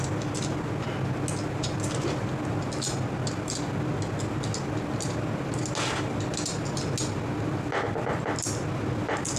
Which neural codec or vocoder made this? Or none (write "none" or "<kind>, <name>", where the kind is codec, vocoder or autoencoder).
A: none